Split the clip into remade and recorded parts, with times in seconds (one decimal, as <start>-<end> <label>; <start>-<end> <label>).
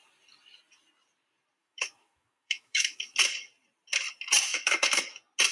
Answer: 0.0-1.6 recorded; 1.6-3.1 remade; 3.1-4.5 recorded; 4.5-5.0 remade; 5.0-5.5 recorded